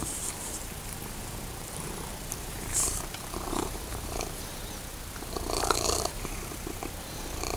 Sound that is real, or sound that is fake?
fake